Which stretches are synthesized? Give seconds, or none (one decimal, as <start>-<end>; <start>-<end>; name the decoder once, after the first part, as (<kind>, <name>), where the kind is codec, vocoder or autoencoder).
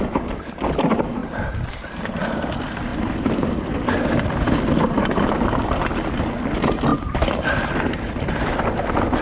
none